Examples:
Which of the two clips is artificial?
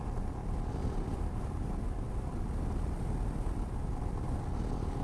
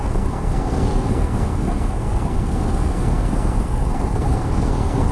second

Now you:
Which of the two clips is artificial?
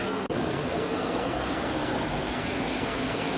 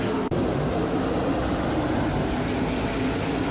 first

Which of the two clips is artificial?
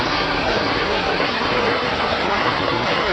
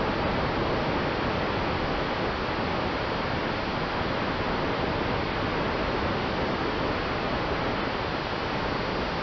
first